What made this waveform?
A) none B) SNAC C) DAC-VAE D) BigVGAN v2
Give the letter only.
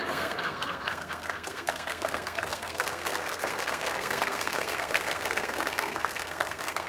B